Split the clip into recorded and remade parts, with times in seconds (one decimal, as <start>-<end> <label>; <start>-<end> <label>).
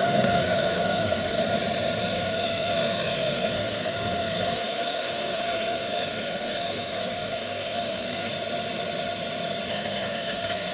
0.0-1.4 remade; 1.4-2.0 recorded; 2.0-8.3 remade; 8.3-9.7 recorded; 9.7-10.7 remade